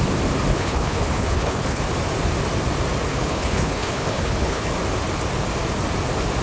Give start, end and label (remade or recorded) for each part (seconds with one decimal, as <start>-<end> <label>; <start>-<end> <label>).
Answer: 0.0-0.5 recorded; 0.5-1.8 remade; 1.8-3.1 recorded; 3.1-4.7 remade; 4.7-6.4 recorded